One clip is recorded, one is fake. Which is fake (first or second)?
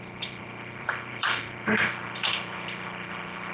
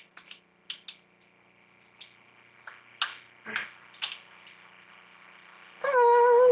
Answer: first